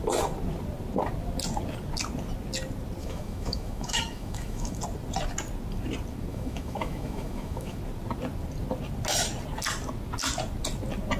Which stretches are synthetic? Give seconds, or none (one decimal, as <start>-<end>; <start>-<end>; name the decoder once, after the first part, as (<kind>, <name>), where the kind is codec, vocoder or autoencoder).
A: 3.0-4.8 (autoencoder, DAC-VAE); 6.3-7.8